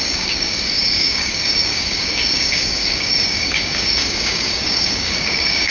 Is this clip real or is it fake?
fake